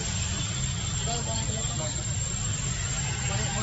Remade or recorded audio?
recorded